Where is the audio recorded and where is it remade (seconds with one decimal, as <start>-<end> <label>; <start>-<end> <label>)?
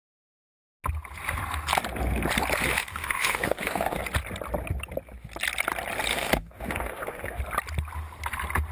0.0-2.8 recorded; 2.8-4.0 remade; 4.0-6.1 recorded; 6.1-7.4 remade; 7.4-8.7 recorded